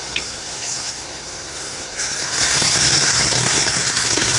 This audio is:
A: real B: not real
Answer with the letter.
B